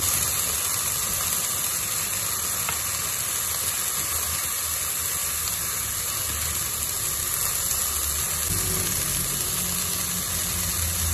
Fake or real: real